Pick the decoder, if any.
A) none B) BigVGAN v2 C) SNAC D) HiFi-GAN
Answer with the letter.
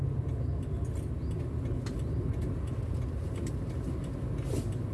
A